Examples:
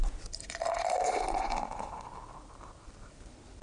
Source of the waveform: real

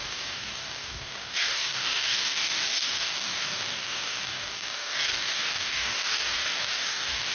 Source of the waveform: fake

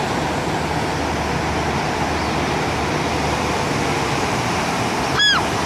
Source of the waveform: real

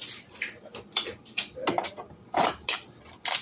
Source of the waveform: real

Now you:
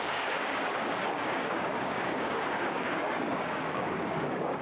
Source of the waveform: fake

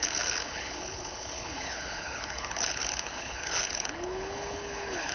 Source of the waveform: fake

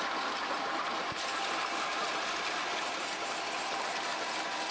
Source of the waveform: fake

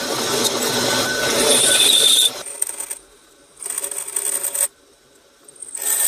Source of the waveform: real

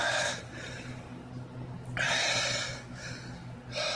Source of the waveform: real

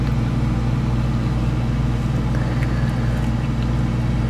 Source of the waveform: real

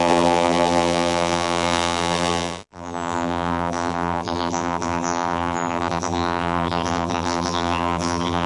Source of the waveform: fake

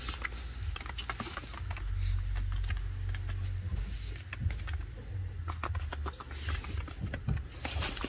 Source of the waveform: real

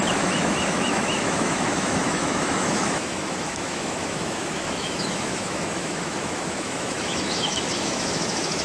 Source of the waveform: fake